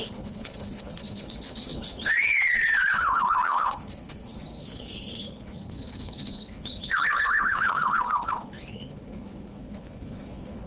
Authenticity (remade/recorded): remade